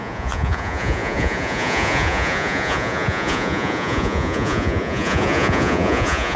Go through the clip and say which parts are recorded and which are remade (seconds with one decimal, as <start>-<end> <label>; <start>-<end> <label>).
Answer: 0.0-6.4 remade